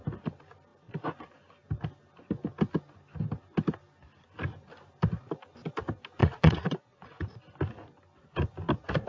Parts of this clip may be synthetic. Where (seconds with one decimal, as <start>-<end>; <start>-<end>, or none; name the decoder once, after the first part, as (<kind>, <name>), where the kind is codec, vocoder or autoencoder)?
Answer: 6.2-7.2 (vocoder, Vocos)